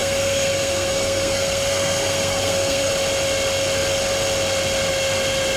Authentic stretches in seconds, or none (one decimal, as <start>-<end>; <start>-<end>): 2.9-5.6